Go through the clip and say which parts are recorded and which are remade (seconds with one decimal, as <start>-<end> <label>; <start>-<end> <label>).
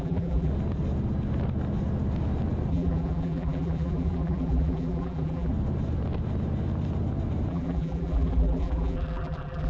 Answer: 0.0-0.5 remade; 0.5-2.7 recorded; 2.7-5.5 remade; 5.5-7.5 recorded; 7.5-9.7 remade